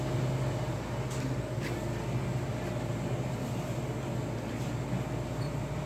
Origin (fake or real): real